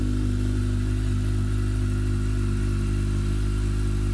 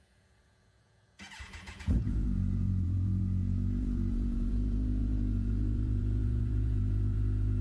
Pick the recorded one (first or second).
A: first